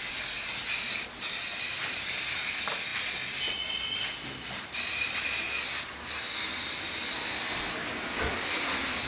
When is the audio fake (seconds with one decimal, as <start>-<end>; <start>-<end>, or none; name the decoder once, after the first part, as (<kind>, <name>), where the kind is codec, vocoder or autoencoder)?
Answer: none